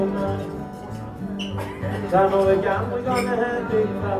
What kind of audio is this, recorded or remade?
recorded